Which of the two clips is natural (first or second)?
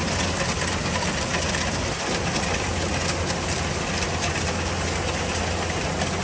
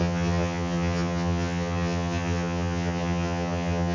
first